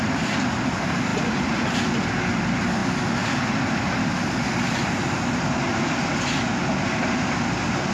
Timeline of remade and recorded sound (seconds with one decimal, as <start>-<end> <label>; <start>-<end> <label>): 0.0-7.9 recorded